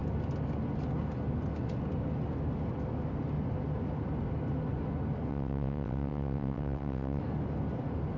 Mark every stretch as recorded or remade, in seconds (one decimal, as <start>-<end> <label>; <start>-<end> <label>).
0.0-5.3 recorded; 5.3-7.2 remade; 7.2-8.2 recorded